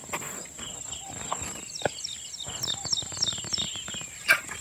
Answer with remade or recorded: recorded